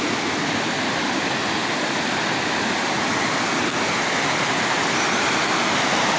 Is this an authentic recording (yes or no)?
yes